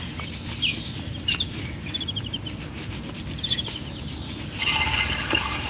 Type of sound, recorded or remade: recorded